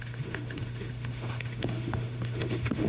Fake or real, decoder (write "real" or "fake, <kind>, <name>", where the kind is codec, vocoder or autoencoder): fake, autoencoder, DAC-VAE